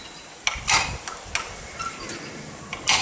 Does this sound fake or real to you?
real